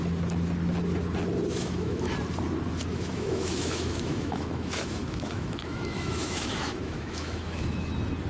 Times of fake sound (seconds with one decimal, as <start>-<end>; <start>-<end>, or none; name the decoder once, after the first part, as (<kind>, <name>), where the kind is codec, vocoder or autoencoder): 1.5-2.1 (autoencoder, DAC-VAE); 2.9-7.9